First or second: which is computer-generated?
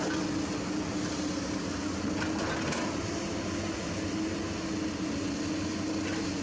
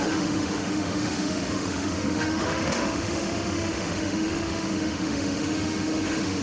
second